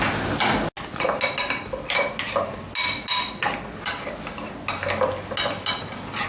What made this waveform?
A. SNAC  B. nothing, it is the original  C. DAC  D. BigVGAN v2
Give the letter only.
B